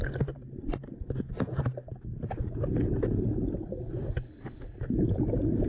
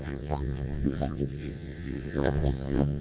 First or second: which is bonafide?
first